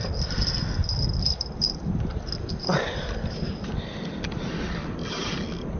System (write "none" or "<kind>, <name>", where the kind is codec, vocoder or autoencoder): none